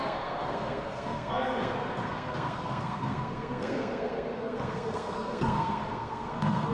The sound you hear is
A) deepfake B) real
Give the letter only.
A